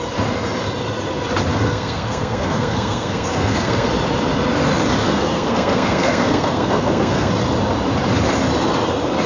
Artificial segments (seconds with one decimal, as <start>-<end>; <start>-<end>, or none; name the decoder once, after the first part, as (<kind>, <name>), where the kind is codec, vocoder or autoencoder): 1.5-3.9 (codec, SNAC); 5.0-7.3